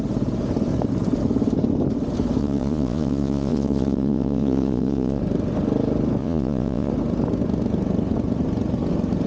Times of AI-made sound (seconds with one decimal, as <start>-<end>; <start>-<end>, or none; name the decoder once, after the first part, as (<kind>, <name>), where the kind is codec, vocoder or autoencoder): 2.4-5.2 (vocoder, Vocos); 6.2-6.9